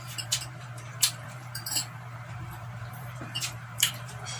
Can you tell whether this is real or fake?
fake